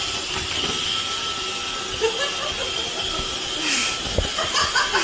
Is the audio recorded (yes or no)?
yes